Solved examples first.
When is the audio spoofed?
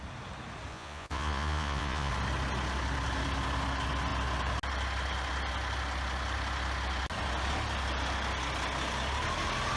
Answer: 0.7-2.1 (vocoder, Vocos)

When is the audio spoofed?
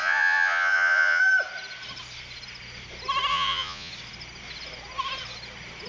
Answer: 0.0-1.2 (vocoder, Vocos); 3.3-3.9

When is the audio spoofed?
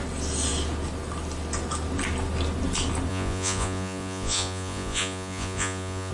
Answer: 3.1-6.1 (vocoder, Vocos)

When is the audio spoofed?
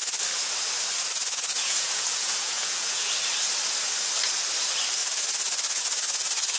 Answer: 1.5-3.1 (vocoder, Vocos)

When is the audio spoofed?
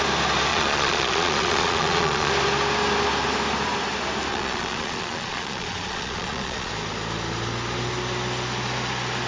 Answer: 0.5-2.3 (vocoder, Vocos); 4.3-6.7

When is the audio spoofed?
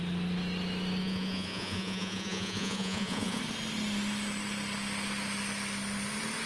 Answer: 1.0-3.4 (vocoder, Vocos)